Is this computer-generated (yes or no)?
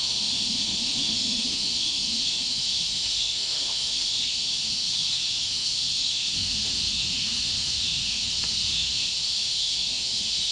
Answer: yes